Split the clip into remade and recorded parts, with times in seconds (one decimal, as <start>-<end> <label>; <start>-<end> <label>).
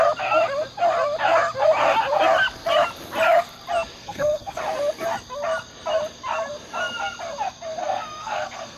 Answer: 0.0-4.0 recorded; 4.0-4.6 remade; 4.6-7.8 recorded; 7.8-8.8 remade